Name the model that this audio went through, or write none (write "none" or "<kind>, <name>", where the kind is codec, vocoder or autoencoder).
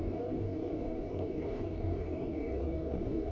codec, DAC